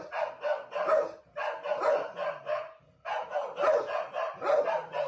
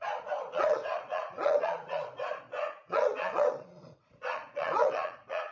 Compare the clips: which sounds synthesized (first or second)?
second